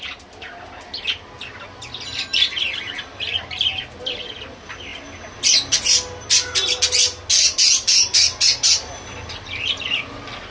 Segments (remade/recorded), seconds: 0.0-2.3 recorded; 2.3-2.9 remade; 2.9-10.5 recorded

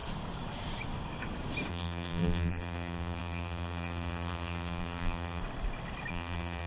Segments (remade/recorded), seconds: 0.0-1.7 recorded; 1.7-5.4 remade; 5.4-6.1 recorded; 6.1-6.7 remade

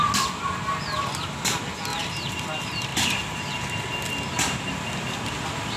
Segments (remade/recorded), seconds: 0.0-1.9 recorded; 1.9-2.4 remade; 2.4-2.9 recorded; 2.9-3.5 remade; 3.5-5.8 recorded